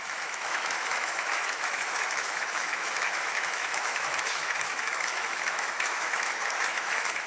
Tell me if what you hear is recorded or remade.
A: remade